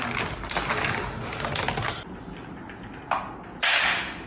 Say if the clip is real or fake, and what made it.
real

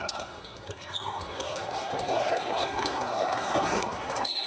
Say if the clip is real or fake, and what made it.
fake, codec, SNAC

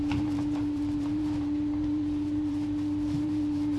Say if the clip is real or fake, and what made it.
fake, vocoder, BigVGAN v2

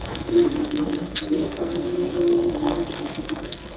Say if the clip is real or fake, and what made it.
fake, codec, SNAC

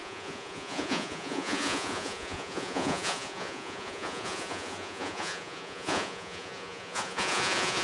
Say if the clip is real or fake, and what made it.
fake, vocoder, Vocos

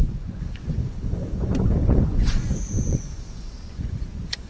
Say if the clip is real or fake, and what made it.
fake, vocoder, Vocos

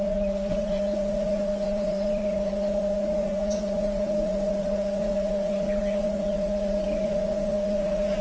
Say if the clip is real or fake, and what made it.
fake, vocoder, Vocos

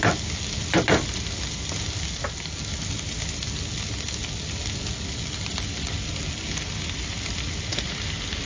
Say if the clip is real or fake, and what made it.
real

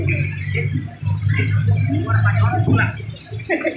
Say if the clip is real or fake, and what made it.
real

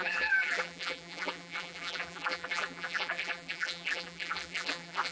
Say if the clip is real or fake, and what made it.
fake, vocoder, BigVGAN v2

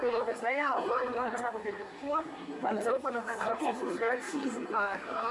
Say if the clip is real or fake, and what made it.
fake, codec, SNAC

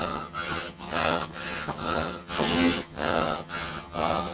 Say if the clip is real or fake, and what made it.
fake, vocoder, HiFi-GAN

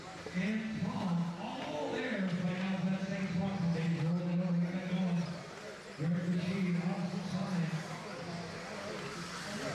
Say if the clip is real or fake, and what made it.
real